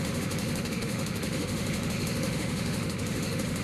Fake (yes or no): yes